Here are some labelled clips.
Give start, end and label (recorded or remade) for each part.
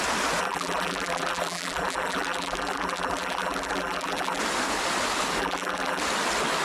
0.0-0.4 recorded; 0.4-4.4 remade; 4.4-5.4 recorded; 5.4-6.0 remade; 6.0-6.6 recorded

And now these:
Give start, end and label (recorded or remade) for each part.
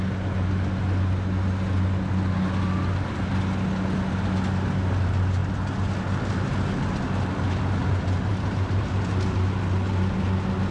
0.0-8.3 recorded; 8.3-9.1 remade; 9.1-10.7 recorded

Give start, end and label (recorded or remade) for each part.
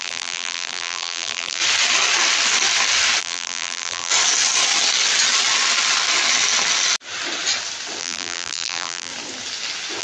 0.0-1.6 remade; 1.6-3.2 recorded; 3.2-4.1 remade; 4.1-8.0 recorded; 8.0-9.1 remade; 9.1-10.0 recorded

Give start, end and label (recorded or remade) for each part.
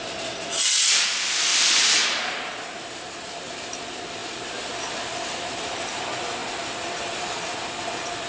0.0-1.5 recorded; 1.5-3.8 remade; 3.8-4.2 recorded; 4.2-6.0 remade; 6.0-8.3 recorded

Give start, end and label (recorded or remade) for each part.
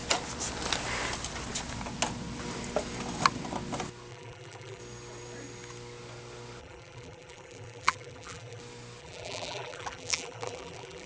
0.0-4.1 recorded; 4.1-4.8 remade; 4.8-6.6 recorded; 6.6-8.6 remade; 8.6-9.0 recorded; 9.0-11.1 remade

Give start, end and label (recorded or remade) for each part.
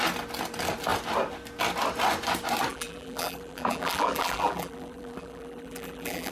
0.0-2.7 recorded; 2.7-6.3 remade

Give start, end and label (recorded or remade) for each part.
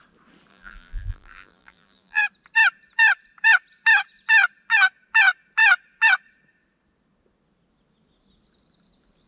0.0-0.5 recorded; 0.5-2.2 remade; 2.2-9.3 recorded